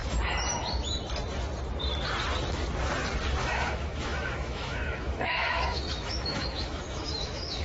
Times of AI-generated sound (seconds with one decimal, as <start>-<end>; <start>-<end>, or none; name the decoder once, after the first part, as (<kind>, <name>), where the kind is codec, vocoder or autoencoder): 3.4-7.6 (autoencoder, DAC-VAE)